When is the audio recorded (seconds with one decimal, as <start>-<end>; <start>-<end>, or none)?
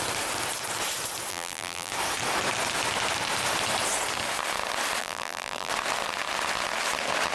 0.0-1.3; 1.9-5.0; 5.7-7.3